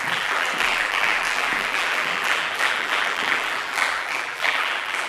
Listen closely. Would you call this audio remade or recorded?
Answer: remade